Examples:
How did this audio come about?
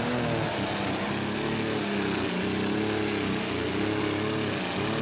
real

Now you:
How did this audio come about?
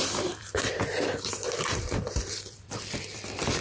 fake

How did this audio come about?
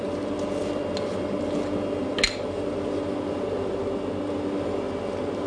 real